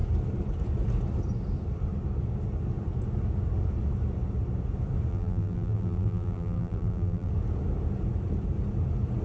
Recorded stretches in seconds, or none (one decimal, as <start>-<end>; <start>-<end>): 0.0-5.1; 7.3-9.2

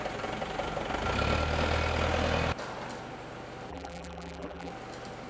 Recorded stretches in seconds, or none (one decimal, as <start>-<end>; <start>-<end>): 0.0-3.7; 4.7-5.3

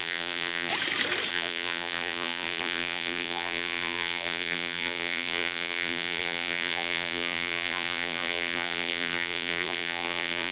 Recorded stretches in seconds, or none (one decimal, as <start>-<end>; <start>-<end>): 0.7-1.3

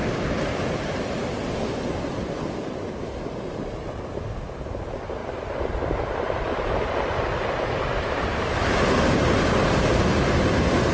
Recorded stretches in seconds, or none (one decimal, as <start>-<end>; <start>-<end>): 1.0-10.9

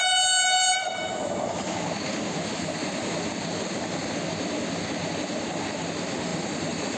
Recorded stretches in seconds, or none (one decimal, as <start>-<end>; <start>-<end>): 0.0-6.3